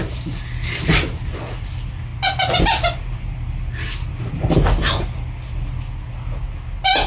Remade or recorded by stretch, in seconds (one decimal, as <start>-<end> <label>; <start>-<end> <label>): 0.0-7.1 recorded